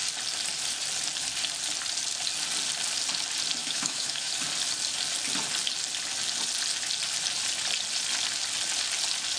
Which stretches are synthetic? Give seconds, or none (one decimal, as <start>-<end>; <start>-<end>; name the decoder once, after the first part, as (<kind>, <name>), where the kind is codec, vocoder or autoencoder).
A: 3.6-4.3 (autoencoder, DAC-VAE)